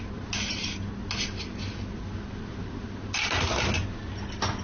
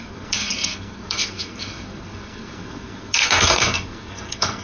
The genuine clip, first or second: first